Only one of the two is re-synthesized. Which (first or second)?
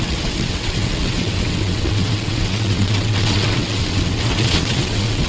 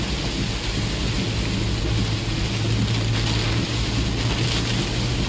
first